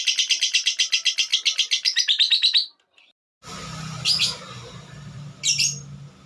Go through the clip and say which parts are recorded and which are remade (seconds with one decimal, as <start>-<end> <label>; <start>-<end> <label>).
0.0-6.3 recorded

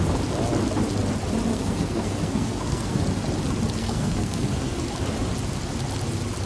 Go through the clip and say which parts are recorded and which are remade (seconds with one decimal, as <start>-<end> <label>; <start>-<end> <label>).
0.0-1.5 recorded; 1.5-3.0 remade; 3.0-3.8 recorded; 3.8-4.8 remade; 4.8-6.5 recorded

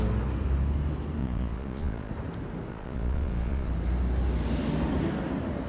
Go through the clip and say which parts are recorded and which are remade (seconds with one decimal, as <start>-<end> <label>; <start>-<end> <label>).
0.0-1.2 recorded; 1.2-2.1 remade; 2.1-2.7 recorded; 2.7-3.7 remade; 3.7-5.7 recorded

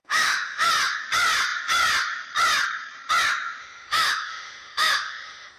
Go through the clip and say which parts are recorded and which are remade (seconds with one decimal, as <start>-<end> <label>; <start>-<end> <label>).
0.0-0.7 remade; 0.7-3.6 recorded; 3.6-5.6 remade

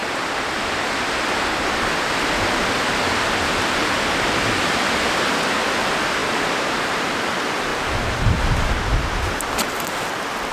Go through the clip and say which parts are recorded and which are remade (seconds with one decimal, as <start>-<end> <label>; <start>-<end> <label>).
0.0-7.7 recorded; 7.7-8.5 remade; 8.5-10.5 recorded

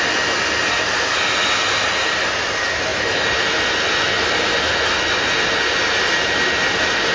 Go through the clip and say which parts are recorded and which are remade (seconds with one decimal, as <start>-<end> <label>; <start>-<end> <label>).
0.0-7.1 recorded

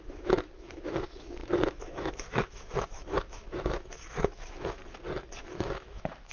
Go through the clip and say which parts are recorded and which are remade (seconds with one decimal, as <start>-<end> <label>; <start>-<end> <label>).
0.0-4.8 remade; 4.8-5.4 recorded; 5.4-6.3 remade

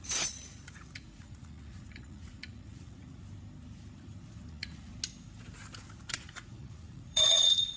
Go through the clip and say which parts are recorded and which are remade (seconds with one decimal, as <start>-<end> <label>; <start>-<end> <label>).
0.0-3.2 remade; 3.2-4.5 recorded; 4.5-4.9 remade; 4.9-6.1 recorded; 6.1-7.8 remade